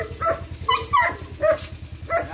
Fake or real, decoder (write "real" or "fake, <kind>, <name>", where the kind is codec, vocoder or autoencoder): real